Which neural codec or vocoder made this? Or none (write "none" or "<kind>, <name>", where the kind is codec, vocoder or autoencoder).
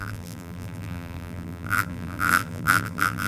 vocoder, BigVGAN v2